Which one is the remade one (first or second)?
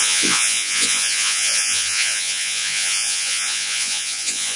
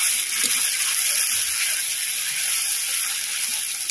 first